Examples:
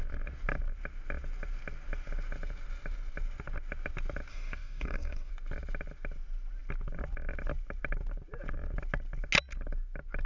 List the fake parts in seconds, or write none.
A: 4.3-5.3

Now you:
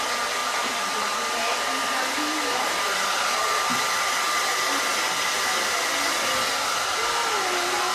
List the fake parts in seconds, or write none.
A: none

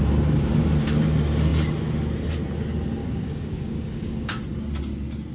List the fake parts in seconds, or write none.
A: 3.0-4.4